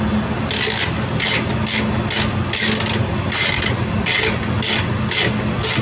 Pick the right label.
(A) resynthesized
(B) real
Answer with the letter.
B